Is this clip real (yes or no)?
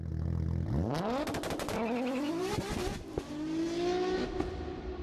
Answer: yes